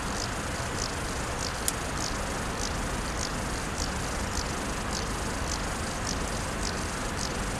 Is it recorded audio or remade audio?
recorded